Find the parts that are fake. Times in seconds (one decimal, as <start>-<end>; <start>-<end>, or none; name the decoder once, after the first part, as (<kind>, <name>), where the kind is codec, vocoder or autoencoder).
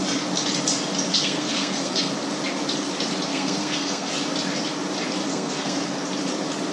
1.1-2.1 (codec, SNAC); 3.3-4.1; 5.3-5.9